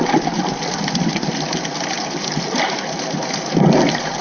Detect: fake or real real